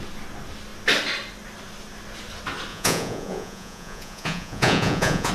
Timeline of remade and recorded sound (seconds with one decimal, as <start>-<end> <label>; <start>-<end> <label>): 0.0-2.7 recorded; 2.7-5.3 remade